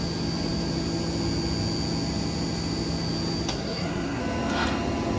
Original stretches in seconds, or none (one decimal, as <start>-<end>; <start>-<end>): 0.0-3.5; 4.2-5.2

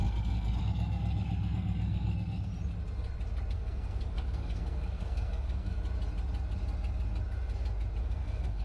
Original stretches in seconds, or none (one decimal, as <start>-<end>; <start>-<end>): 2.5-3.5; 5.8-8.0